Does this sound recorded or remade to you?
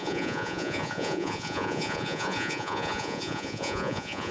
remade